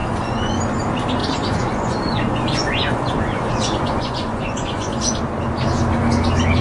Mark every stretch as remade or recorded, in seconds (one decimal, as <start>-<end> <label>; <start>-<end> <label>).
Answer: 0.0-0.6 remade; 0.6-1.2 recorded; 1.2-5.2 remade; 5.2-6.6 recorded